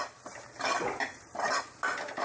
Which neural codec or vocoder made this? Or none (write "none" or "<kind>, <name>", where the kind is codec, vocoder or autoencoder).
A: none